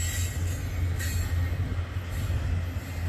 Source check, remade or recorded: recorded